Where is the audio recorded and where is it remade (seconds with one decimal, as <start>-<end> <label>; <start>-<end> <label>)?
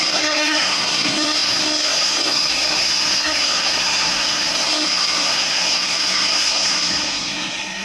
0.0-7.8 remade